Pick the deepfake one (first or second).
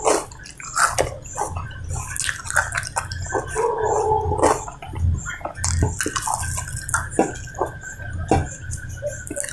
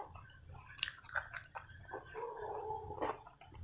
second